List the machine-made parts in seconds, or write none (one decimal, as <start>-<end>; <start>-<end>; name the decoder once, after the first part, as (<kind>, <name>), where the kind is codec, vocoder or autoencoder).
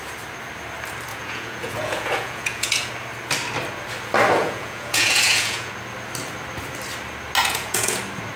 1.1-2.9 (vocoder, Vocos); 4.4-5.7; 7.4-8.0